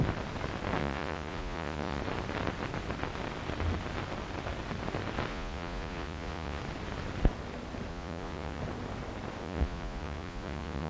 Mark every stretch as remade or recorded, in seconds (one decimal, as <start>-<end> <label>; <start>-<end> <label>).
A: 0.0-0.8 recorded; 0.8-2.0 remade; 2.0-5.3 recorded; 5.3-6.6 remade; 6.6-7.9 recorded; 7.9-8.6 remade; 8.6-9.4 recorded; 9.4-10.9 remade